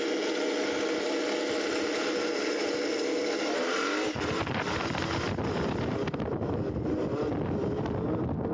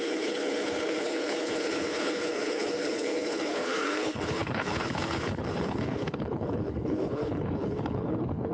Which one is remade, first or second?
second